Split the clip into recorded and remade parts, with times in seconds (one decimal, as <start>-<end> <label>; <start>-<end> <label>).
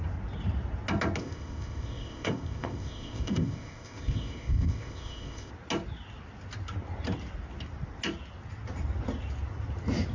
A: 0.0-1.2 recorded; 1.2-5.5 remade; 5.5-10.1 recorded